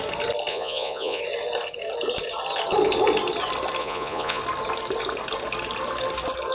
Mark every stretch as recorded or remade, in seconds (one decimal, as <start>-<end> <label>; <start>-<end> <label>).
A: 0.0-0.5 recorded; 0.5-1.2 remade; 1.2-3.8 recorded; 3.8-4.4 remade; 4.4-6.5 recorded